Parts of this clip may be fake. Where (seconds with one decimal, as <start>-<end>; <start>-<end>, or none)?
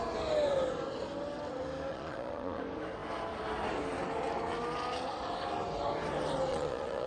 1.9-2.6; 6.5-7.1